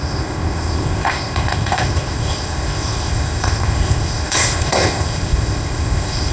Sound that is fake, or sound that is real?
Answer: fake